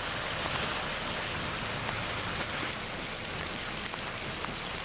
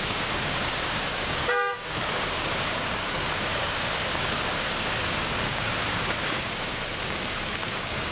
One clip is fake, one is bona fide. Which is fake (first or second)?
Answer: second